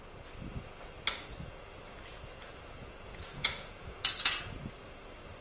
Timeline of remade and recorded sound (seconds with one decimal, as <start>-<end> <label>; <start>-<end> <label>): 0.0-2.1 recorded; 2.1-4.6 remade; 4.6-5.4 recorded